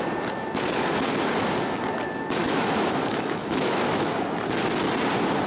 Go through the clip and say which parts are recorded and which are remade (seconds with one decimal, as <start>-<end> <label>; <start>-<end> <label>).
0.0-2.4 recorded; 2.4-4.1 remade; 4.1-5.5 recorded